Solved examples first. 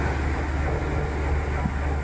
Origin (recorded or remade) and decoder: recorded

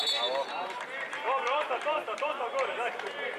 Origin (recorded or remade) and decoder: recorded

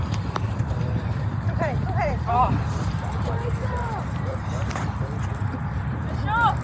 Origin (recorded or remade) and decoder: remade, vocoder, BigVGAN v2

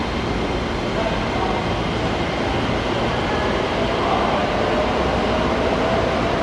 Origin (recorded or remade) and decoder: recorded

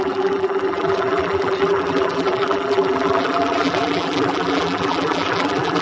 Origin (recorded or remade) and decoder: remade, vocoder, BigVGAN v2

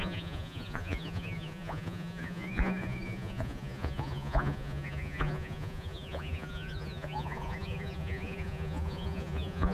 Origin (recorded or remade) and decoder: remade, vocoder, Vocos